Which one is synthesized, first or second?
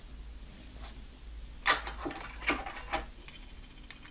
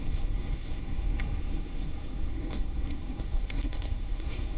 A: second